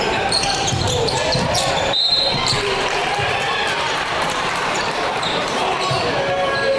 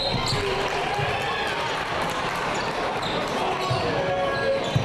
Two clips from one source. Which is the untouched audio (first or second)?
second